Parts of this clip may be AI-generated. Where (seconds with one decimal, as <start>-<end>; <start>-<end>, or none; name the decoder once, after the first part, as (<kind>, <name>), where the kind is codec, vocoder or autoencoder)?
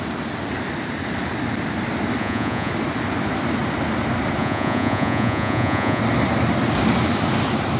2.2-2.7 (vocoder, Vocos); 4.4-6.0